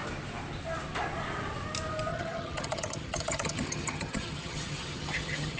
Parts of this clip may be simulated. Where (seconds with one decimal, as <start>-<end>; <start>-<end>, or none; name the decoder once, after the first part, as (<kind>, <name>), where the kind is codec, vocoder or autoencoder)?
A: 2.1-5.6 (vocoder, HiFi-GAN)